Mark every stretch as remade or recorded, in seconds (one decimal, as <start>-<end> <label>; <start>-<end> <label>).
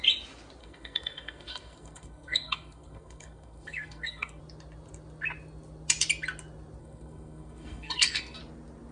0.0-0.6 recorded; 0.6-4.4 remade; 4.4-6.8 recorded; 6.8-8.4 remade; 8.4-8.9 recorded